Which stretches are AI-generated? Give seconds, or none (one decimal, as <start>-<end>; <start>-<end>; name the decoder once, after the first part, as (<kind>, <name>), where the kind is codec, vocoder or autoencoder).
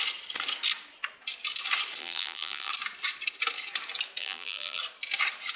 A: 2.0-2.7 (vocoder, BigVGAN v2); 4.2-4.8